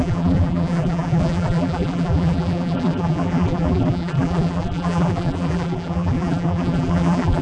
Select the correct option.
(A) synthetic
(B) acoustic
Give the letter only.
A